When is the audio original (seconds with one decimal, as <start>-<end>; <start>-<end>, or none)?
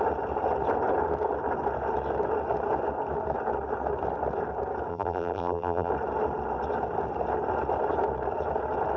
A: 0.0-4.9; 5.9-9.0